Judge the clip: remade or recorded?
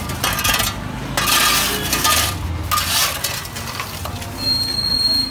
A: recorded